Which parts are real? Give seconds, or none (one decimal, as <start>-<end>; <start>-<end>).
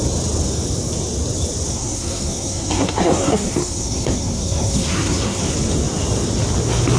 0.0-1.7; 5.4-7.0